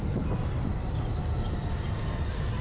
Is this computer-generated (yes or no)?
no